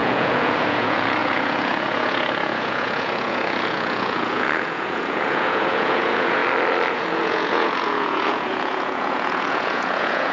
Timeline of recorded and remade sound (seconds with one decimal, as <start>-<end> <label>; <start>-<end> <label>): 0.0-6.4 remade; 6.4-6.9 recorded; 6.9-10.3 remade